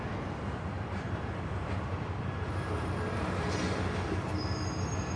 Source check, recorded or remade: recorded